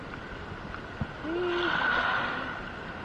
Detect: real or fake real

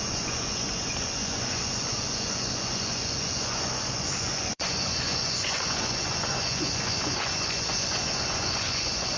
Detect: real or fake fake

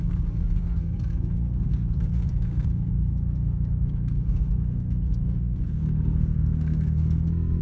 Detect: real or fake fake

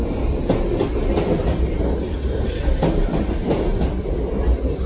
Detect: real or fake real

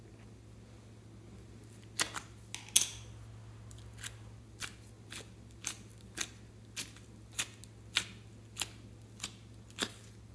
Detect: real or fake real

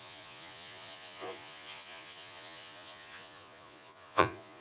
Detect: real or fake fake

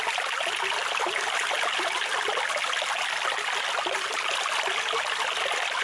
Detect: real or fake real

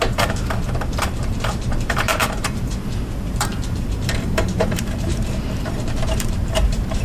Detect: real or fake fake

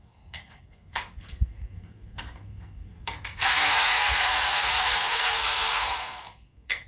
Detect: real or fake fake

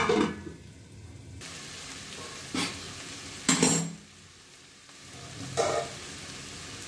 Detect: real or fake real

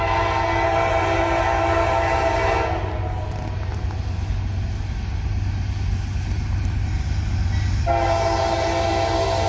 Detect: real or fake real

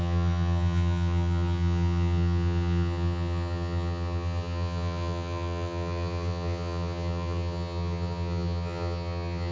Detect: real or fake fake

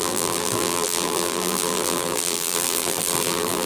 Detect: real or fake fake